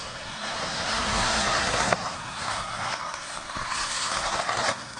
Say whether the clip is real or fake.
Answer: fake